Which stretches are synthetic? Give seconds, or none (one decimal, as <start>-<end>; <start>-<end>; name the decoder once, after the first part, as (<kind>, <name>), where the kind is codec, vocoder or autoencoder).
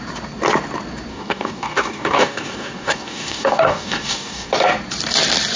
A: 1.1-4.5 (codec, DAC)